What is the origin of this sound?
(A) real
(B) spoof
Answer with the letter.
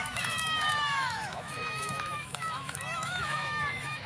B